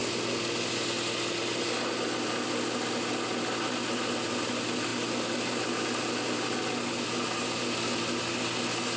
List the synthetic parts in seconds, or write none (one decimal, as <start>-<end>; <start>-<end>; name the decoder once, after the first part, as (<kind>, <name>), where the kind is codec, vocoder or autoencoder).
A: none